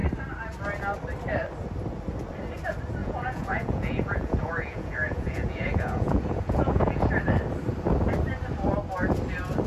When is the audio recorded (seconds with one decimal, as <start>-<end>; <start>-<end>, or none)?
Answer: 0.0-3.0; 7.1-9.7